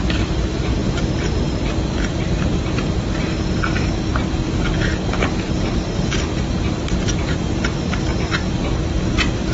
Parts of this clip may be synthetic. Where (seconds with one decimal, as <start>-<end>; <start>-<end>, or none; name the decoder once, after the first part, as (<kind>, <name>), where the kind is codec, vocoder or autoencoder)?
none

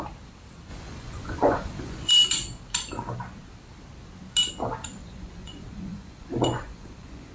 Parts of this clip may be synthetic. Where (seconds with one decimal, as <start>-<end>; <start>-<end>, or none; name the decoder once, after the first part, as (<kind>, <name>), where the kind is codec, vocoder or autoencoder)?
0.7-2.1 (vocoder, Vocos); 5.0-7.3

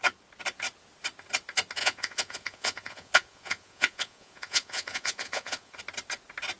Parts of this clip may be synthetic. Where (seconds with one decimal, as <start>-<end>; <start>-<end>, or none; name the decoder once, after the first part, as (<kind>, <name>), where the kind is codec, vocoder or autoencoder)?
1.8-5.8 (vocoder, Vocos)